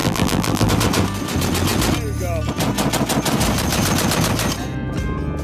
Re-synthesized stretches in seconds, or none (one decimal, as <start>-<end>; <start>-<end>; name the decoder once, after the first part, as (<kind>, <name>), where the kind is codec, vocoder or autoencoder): 0.0-0.7 (vocoder, BigVGAN v2)